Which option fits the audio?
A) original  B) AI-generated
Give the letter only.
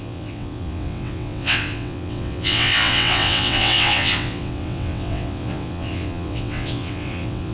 B